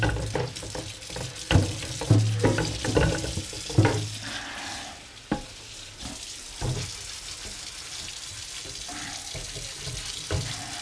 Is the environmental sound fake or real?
real